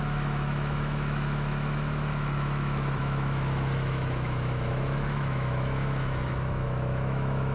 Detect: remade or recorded remade